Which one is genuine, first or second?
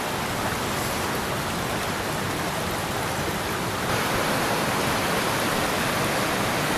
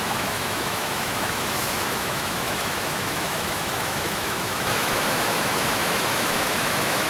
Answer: first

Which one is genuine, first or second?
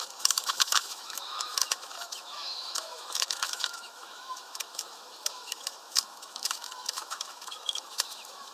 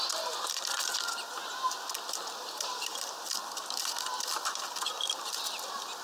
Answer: second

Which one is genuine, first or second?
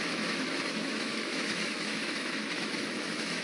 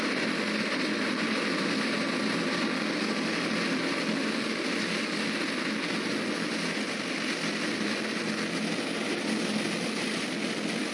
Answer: second